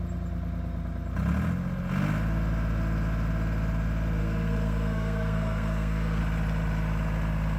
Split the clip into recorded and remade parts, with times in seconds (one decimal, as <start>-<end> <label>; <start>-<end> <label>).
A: 0.0-4.2 recorded; 4.2-6.2 remade; 6.2-7.6 recorded